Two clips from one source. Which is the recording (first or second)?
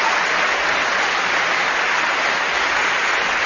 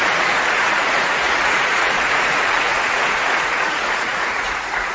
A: first